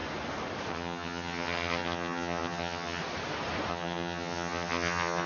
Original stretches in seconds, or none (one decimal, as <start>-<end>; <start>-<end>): 0.0-0.7; 3.0-3.7